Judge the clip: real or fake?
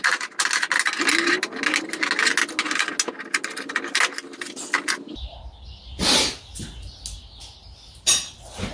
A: real